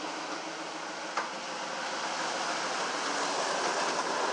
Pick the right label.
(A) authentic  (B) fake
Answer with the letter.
A